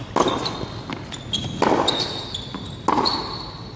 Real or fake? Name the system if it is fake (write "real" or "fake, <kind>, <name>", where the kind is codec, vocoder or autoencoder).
real